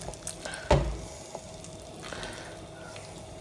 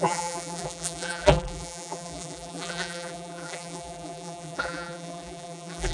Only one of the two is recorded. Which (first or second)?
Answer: first